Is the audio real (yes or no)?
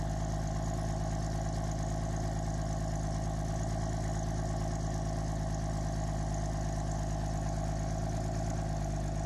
yes